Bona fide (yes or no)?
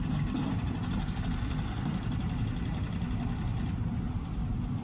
yes